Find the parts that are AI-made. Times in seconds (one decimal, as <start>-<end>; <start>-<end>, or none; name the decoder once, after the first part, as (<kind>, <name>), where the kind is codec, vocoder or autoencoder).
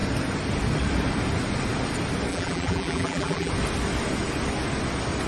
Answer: 2.3-3.5 (vocoder, BigVGAN v2)